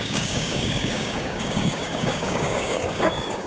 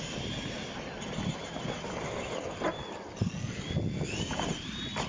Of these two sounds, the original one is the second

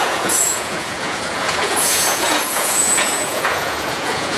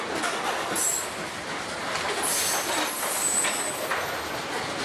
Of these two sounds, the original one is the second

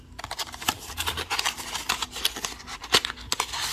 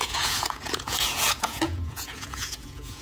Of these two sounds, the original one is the first